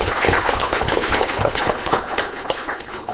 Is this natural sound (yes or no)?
no